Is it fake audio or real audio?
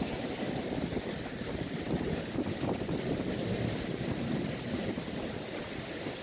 real